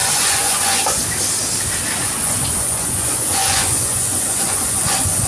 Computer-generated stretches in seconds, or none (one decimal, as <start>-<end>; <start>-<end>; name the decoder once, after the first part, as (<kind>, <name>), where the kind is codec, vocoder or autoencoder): 0.0-1.0 (vocoder, Vocos); 2.0-5.3